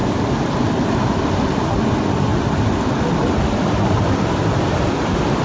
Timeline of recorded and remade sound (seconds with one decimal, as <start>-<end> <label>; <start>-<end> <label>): 0.0-1.7 remade; 1.7-5.4 recorded